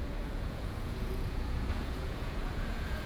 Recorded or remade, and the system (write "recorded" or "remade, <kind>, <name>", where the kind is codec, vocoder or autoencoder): remade, vocoder, Vocos